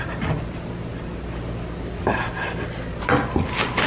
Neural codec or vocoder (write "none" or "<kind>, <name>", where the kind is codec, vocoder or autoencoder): none